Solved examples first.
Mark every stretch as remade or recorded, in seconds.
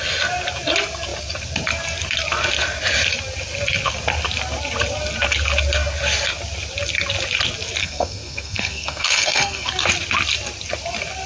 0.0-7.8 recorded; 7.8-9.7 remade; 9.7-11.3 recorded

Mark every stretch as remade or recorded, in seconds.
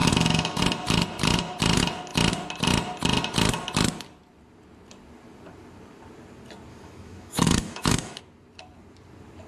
0.0-0.6 remade; 0.6-6.7 recorded; 6.7-8.2 remade; 8.2-9.5 recorded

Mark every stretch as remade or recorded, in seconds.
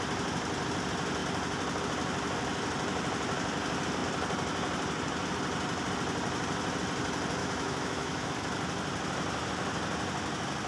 0.0-7.4 recorded; 7.4-8.3 remade; 8.3-10.7 recorded